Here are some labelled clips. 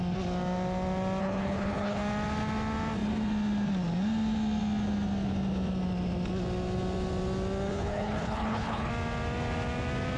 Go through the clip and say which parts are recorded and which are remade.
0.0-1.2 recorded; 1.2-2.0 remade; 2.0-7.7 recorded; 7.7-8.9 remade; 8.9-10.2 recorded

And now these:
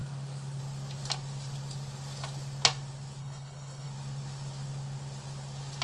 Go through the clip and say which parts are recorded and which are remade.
0.0-3.2 recorded; 3.2-3.9 remade; 3.9-5.8 recorded

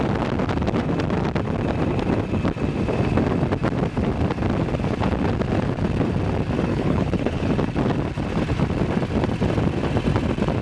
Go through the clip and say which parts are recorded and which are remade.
0.0-6.7 recorded; 6.7-7.5 remade; 7.5-10.6 recorded

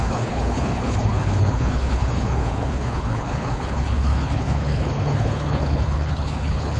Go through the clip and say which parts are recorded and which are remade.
0.0-6.8 remade

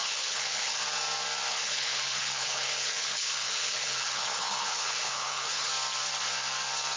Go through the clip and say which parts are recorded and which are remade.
0.0-0.8 remade; 0.8-1.5 recorded; 1.5-5.7 remade; 5.7-7.0 recorded

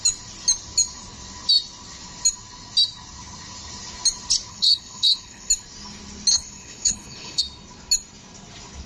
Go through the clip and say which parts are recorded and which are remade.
0.0-4.5 recorded; 4.5-5.5 remade; 5.5-6.3 recorded; 6.3-7.4 remade; 7.4-8.9 recorded

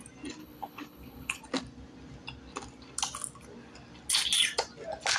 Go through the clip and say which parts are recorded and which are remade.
0.0-0.4 recorded; 0.4-1.4 remade; 1.4-5.2 recorded